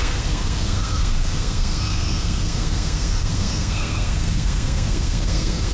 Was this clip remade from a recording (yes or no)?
yes